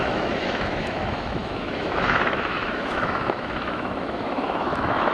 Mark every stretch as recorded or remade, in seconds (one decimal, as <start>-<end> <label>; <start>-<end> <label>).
0.0-5.1 remade